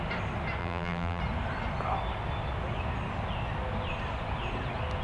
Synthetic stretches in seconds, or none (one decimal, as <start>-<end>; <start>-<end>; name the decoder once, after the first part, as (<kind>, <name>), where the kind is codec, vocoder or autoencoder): 0.6-1.2 (vocoder, BigVGAN v2)